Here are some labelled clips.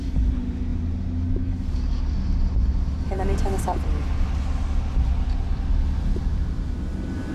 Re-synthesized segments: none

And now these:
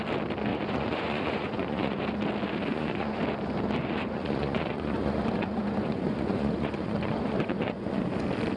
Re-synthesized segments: 0.5-2.0 (vocoder, Vocos); 2.7-3.2; 3.8-8.0

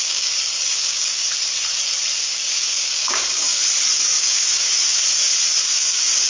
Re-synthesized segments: 0.0-1.3 (codec, DAC); 2.2-3.6; 4.2-5.0; 5.6-6.3

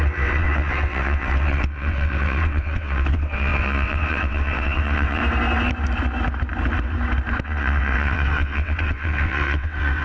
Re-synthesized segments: 0.0-5.2 (vocoder, WaveNeXt); 7.4-10.0